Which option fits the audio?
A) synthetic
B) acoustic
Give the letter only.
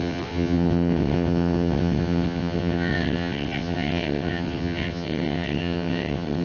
A